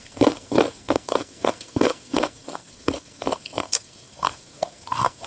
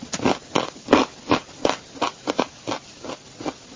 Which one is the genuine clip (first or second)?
second